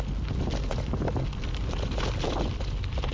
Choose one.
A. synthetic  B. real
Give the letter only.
B